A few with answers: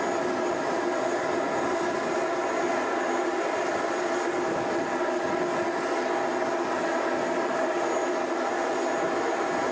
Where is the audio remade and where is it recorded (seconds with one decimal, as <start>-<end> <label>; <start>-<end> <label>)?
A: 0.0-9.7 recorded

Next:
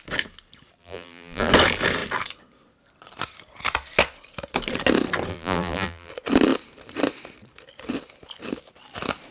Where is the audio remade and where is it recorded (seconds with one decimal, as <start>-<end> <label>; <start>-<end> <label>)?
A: 0.0-0.8 recorded; 0.8-1.5 remade; 1.5-5.3 recorded; 5.3-6.1 remade; 6.1-9.3 recorded

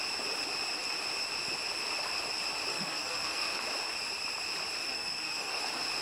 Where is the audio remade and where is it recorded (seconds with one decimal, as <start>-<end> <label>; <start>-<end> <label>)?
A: 0.0-2.7 recorded; 2.7-3.6 remade; 3.6-4.8 recorded; 4.8-5.6 remade; 5.6-6.0 recorded

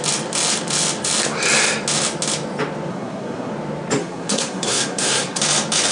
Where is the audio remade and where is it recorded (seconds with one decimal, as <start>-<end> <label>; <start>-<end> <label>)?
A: 0.0-2.9 recorded; 2.9-3.5 remade; 3.5-4.0 recorded; 4.0-5.4 remade; 5.4-5.9 recorded

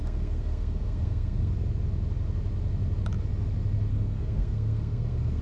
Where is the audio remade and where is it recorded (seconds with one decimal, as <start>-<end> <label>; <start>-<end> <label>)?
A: 0.0-1.5 remade; 1.5-3.9 recorded; 3.9-5.4 remade